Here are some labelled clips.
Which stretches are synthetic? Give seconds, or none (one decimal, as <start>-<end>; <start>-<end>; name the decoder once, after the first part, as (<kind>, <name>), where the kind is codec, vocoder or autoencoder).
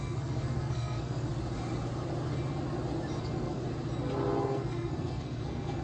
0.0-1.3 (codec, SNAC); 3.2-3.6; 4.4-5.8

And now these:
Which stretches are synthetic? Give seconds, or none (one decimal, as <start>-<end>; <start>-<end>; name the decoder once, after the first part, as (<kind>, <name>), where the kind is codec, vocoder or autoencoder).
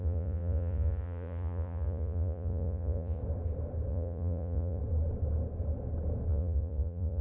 0.0-3.2 (vocoder, Vocos); 3.9-4.8; 6.3-7.2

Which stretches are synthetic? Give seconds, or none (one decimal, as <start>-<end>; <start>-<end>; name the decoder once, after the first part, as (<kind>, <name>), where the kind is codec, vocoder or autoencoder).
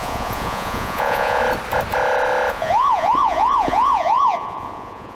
0.0-1.4 (vocoder, Vocos); 2.5-5.1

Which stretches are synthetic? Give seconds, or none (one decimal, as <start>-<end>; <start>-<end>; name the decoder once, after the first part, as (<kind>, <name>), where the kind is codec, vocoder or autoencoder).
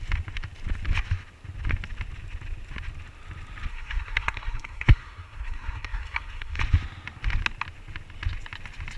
3.7-6.6 (codec, SNAC)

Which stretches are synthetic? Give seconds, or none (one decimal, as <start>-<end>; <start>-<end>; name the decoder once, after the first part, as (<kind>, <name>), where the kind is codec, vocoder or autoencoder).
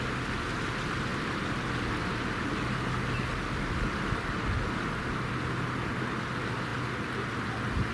none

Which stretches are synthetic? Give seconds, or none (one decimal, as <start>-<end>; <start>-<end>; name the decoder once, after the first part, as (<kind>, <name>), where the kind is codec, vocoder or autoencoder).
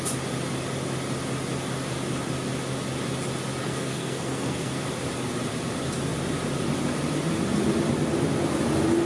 3.6-4.8 (codec, SNAC)